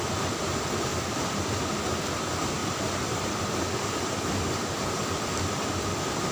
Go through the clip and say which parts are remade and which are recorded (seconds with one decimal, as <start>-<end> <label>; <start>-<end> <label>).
0.0-0.9 recorded; 0.9-1.6 remade; 1.6-2.6 recorded; 2.6-5.8 remade; 5.8-6.3 recorded